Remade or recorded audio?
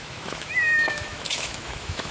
remade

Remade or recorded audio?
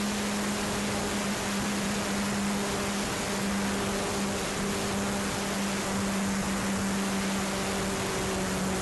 recorded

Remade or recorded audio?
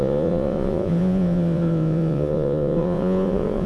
remade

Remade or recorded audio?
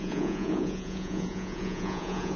remade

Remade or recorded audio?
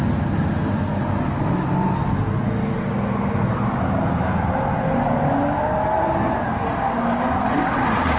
recorded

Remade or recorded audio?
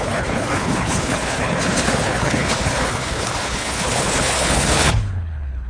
remade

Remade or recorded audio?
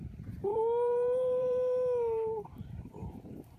remade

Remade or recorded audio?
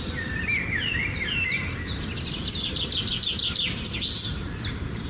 recorded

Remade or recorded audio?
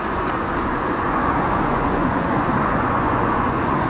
remade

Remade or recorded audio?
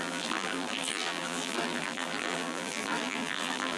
remade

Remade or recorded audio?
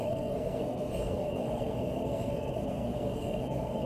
remade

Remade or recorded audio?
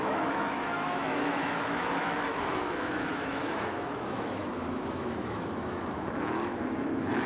remade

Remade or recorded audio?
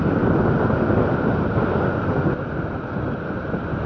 recorded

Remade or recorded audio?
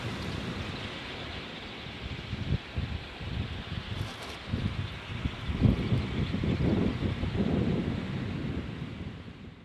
recorded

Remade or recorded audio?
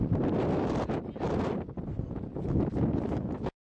recorded